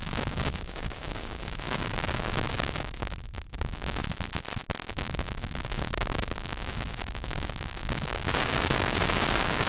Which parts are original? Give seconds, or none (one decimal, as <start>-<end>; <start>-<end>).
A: 4.0-4.9